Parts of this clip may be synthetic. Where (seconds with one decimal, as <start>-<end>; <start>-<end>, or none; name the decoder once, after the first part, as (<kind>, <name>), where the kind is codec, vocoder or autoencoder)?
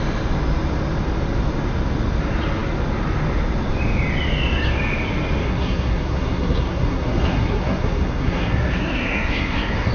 5.4-9.9 (codec, SNAC)